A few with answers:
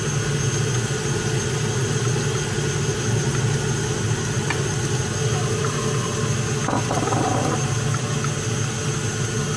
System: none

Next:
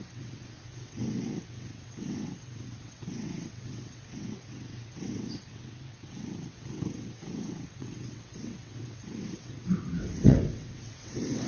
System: vocoder, WaveNeXt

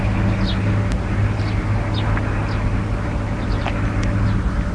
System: none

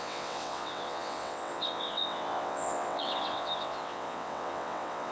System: vocoder, WaveNeXt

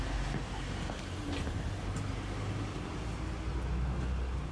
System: none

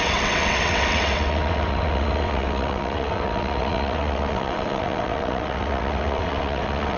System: vocoder, WaveNeXt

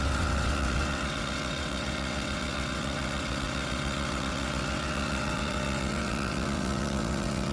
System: vocoder, WaveNeXt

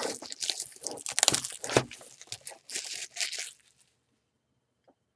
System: none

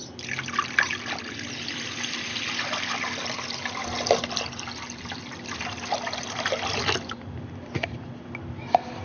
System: none